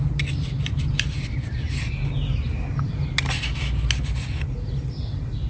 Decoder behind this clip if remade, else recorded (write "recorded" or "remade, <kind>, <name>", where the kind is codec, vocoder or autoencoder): recorded